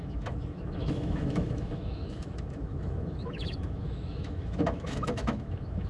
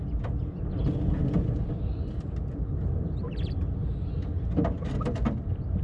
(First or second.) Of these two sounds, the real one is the second